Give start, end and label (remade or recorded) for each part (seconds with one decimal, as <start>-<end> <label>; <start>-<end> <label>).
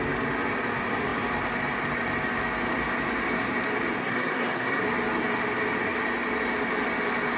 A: 0.0-4.0 recorded; 4.0-4.8 remade; 4.8-7.4 recorded